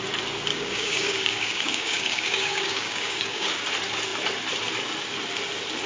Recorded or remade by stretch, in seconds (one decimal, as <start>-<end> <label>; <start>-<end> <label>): 0.0-0.5 recorded; 0.5-3.6 remade; 3.6-5.9 recorded